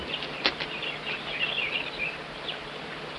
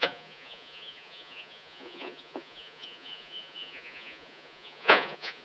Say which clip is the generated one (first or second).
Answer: second